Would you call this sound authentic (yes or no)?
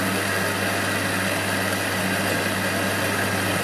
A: yes